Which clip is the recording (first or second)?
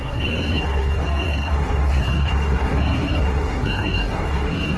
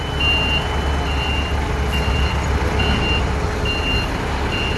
second